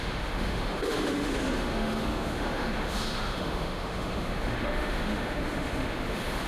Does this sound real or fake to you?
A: fake